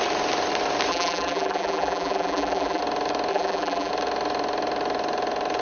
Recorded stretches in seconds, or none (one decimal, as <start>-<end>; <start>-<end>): 0.0-0.9; 2.8-3.3; 3.9-5.6